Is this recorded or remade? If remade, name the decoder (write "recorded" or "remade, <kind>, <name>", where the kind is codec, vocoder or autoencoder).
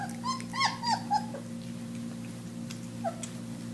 recorded